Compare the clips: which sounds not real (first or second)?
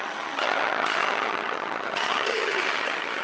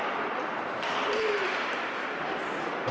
first